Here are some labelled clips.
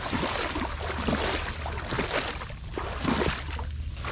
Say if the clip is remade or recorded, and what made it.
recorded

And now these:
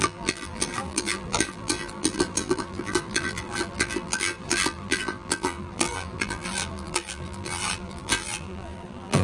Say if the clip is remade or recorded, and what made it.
remade, vocoder, BigVGAN v2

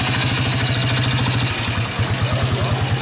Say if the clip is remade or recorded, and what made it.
recorded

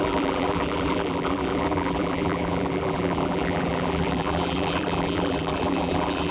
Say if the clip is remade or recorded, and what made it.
remade, vocoder, BigVGAN v2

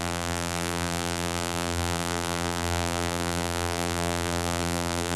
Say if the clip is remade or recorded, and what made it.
remade, vocoder, BigVGAN v2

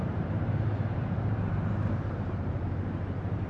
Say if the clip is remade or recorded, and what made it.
remade, vocoder, BigVGAN v2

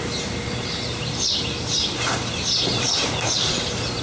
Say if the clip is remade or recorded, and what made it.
remade, vocoder, BigVGAN v2